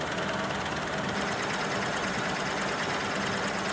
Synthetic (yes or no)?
no